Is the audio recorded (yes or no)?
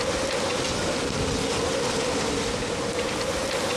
yes